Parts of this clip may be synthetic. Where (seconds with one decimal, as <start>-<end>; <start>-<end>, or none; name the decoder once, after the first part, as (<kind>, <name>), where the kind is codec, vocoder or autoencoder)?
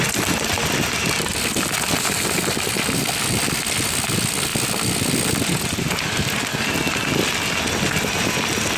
none